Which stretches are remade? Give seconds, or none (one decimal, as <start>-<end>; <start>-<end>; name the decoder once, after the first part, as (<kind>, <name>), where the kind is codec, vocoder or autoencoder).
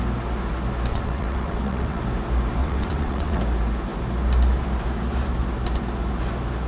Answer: 0.9-2.0 (vocoder, WaveNeXt); 2.6-3.4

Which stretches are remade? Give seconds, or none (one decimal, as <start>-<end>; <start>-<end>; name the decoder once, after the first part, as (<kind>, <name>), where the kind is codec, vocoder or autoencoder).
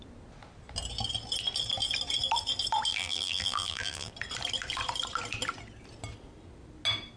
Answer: 2.9-4.1 (vocoder, BigVGAN v2)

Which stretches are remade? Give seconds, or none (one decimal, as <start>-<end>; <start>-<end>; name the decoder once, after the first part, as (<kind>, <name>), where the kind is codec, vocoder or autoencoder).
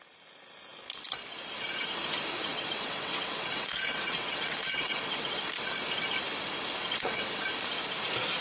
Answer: 2.5-5.5 (vocoder, WaveNeXt); 6.8-7.4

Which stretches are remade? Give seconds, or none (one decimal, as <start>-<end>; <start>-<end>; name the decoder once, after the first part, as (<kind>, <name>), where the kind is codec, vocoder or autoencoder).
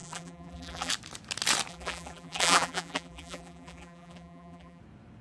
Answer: 0.0-0.9 (vocoder, BigVGAN v2); 1.7-4.8